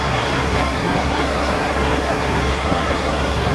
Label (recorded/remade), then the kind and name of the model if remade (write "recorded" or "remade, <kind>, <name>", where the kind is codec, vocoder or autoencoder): remade, codec, SNAC